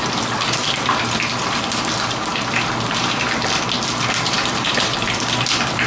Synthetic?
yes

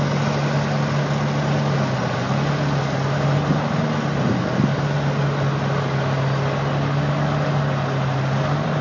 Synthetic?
no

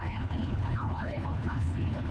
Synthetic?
yes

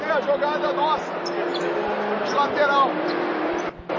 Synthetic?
no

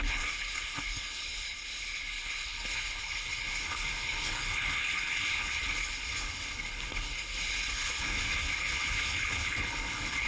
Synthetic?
yes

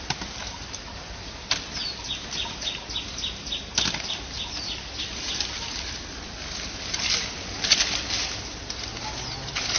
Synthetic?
no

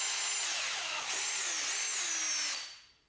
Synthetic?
no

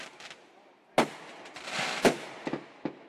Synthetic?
no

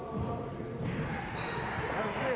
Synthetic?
no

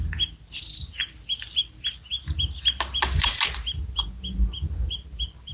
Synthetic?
no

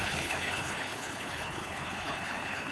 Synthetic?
yes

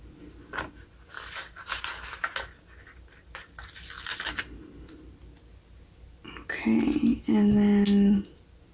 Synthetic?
no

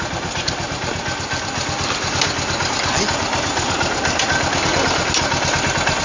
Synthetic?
no